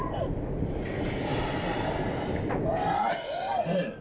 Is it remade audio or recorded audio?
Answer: recorded